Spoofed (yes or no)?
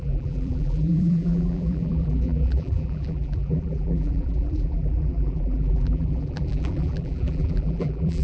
yes